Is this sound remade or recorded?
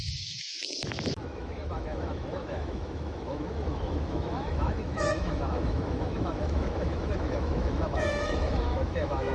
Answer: remade